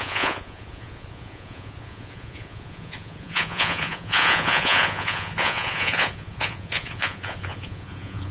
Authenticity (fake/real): fake